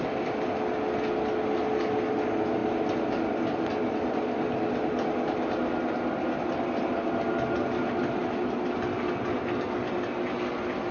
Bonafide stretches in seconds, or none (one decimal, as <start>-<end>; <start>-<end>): 0.0-10.9

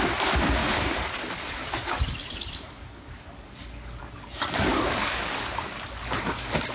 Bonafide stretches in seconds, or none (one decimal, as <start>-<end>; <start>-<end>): 0.0-0.6; 4.0-4.7; 5.9-6.7